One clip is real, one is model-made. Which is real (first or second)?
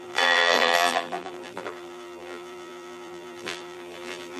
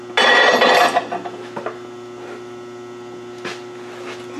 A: second